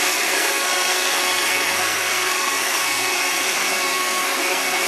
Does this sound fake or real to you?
fake